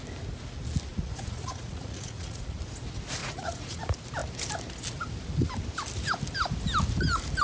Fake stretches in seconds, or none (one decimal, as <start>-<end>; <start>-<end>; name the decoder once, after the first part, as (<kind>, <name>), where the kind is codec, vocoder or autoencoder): 0.9-2.6 (vocoder, Vocos); 3.2-3.8